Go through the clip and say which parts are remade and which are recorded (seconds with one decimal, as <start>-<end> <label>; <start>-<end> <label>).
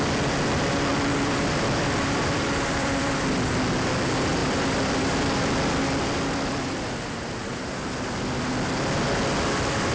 0.0-0.9 recorded; 0.9-3.5 remade; 3.5-4.4 recorded; 4.4-8.4 remade; 8.4-9.9 recorded